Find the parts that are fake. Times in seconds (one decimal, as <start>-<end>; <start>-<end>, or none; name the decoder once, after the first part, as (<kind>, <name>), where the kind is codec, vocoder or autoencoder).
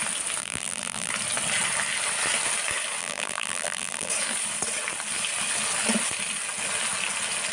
0.4-1.1 (vocoder, BigVGAN v2); 3.0-4.1